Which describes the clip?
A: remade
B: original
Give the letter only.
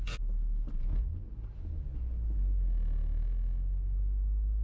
B